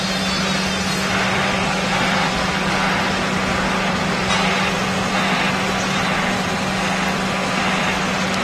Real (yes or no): yes